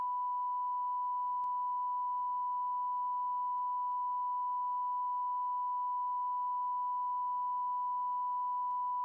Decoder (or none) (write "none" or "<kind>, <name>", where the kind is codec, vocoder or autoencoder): none